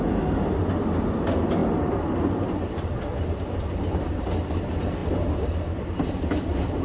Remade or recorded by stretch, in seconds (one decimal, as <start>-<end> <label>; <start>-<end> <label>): 0.0-6.8 recorded